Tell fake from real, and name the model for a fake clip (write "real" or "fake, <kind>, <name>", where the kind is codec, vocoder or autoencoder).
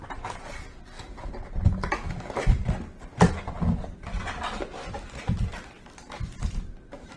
real